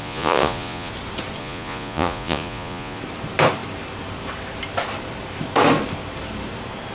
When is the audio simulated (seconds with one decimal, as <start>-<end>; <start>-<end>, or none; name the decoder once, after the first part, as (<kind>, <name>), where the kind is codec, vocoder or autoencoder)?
0.0-0.9 (vocoder, Vocos); 1.4-3.0